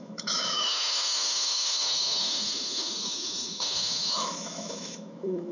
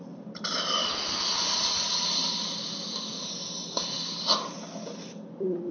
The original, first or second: second